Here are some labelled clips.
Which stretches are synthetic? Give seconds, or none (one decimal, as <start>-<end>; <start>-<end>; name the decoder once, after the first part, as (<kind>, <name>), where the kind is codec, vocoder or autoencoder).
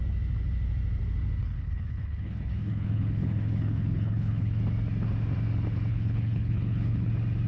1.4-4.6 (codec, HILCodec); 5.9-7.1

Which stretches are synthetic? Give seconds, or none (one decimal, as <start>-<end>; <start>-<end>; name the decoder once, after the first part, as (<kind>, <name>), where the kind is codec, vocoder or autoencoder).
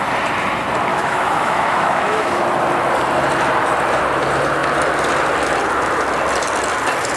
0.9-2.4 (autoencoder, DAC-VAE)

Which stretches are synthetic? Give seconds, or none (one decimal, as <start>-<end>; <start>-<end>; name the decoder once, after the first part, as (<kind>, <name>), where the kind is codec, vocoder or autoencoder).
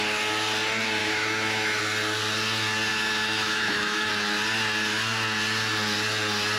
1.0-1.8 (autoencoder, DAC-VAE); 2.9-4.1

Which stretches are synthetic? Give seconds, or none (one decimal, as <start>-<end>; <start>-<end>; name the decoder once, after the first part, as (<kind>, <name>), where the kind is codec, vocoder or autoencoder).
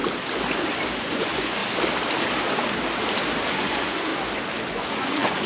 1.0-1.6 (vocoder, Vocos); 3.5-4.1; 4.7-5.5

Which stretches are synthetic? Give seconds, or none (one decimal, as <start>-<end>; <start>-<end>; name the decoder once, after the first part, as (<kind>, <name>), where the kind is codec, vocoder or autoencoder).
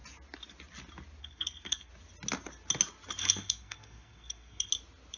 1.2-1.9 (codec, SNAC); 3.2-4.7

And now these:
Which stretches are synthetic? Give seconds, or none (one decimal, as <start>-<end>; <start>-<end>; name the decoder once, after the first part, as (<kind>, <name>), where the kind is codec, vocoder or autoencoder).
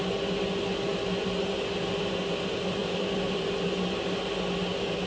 2.8-3.4 (vocoder, BigVGAN v2)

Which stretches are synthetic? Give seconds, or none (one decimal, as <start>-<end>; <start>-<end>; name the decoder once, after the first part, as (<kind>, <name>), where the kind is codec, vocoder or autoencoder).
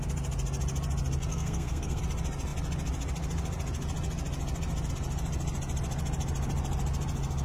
1.3-2.0 (codec, SNAC)